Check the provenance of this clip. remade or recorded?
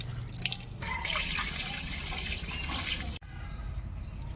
recorded